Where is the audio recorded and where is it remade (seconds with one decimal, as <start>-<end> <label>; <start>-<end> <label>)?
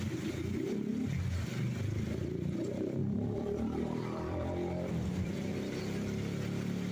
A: 0.0-3.0 recorded; 3.0-5.8 remade; 5.8-6.9 recorded